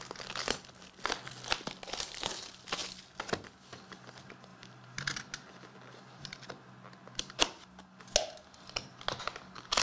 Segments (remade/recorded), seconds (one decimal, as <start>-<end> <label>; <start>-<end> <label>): 0.0-9.8 recorded